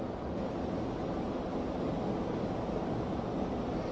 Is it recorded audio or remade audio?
recorded